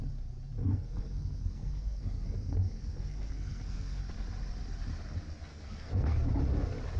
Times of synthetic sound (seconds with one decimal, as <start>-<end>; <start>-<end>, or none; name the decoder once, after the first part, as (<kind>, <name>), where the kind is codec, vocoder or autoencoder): 0.6-4.0 (codec, SNAC); 5.5-6.3